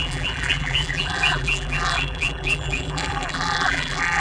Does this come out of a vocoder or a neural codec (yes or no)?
yes